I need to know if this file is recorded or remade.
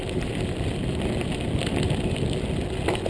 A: recorded